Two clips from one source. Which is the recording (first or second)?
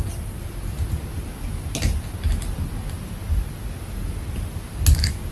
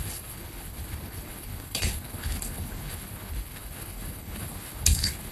first